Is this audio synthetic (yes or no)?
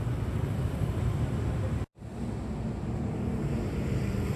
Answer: no